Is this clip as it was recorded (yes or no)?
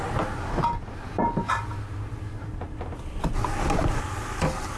yes